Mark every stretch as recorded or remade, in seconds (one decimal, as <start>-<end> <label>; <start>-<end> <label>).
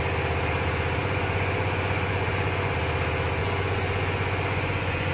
0.0-1.0 recorded; 1.0-2.7 remade; 2.7-3.4 recorded; 3.4-5.1 remade